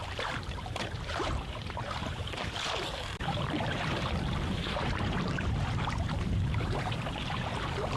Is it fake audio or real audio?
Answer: fake